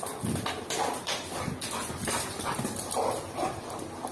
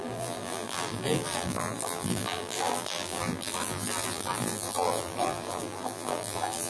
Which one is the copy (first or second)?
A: second